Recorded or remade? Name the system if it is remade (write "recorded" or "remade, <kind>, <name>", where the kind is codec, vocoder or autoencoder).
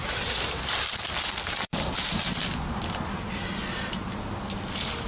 recorded